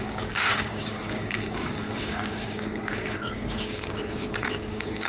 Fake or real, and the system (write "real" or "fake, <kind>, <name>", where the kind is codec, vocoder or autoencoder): fake, codec, DAC